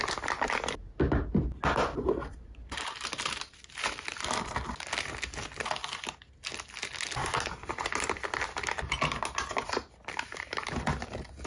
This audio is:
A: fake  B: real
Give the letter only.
B